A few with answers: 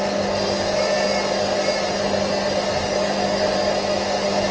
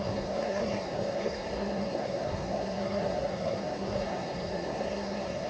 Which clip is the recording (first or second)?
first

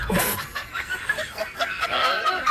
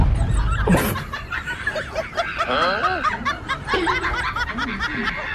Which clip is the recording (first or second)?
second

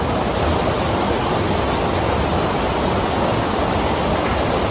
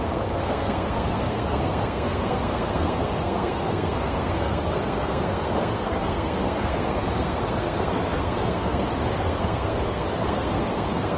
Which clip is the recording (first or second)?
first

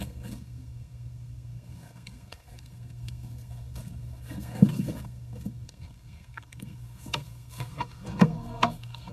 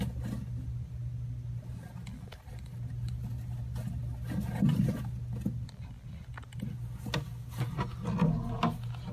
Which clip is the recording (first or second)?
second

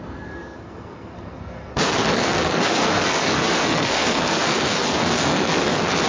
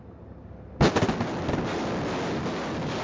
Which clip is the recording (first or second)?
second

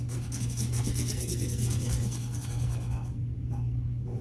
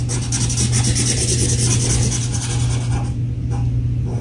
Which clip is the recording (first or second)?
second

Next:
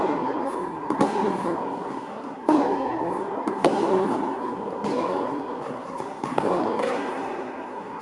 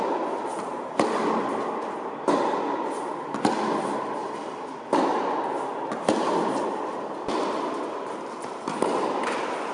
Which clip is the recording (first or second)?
second